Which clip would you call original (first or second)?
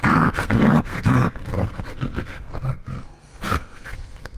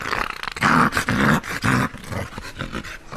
second